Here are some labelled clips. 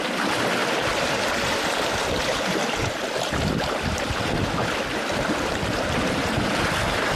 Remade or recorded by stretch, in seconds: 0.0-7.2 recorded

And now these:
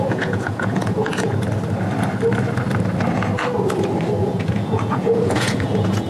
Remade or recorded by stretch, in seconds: 0.0-1.3 remade; 1.3-4.2 recorded; 4.2-6.1 remade

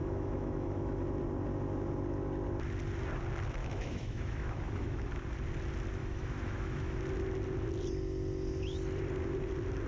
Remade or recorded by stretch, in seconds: 0.0-1.0 remade; 1.0-3.6 recorded; 3.6-5.1 remade; 5.1-6.0 recorded; 6.0-7.0 remade; 7.0-9.9 recorded

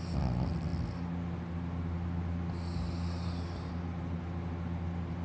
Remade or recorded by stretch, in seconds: 0.0-5.2 recorded

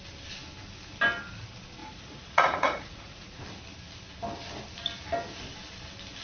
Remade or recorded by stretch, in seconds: 0.0-1.8 recorded; 1.8-3.4 remade; 3.4-6.2 recorded